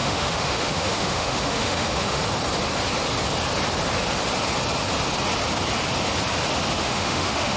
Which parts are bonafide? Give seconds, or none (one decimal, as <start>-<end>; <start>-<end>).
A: 2.2-6.8